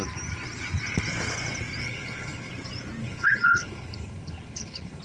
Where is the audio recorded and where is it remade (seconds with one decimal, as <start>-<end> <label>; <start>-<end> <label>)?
0.0-1.8 recorded; 1.8-2.5 remade; 2.5-3.0 recorded; 3.0-5.0 remade